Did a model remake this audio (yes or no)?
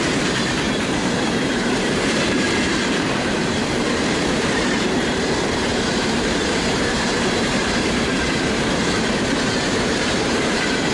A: yes